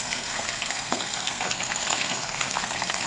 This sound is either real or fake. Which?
fake